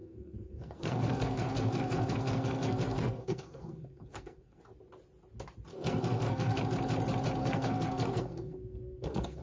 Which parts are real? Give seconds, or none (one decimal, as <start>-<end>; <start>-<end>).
4.6-5.7; 6.6-7.4